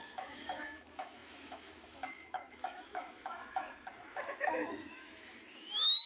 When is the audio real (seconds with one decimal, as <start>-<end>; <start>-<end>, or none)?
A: none